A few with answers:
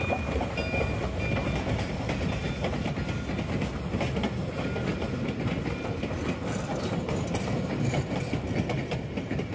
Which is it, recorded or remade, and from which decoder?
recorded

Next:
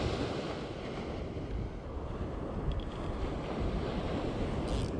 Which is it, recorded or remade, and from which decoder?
recorded